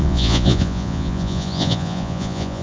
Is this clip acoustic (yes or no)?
no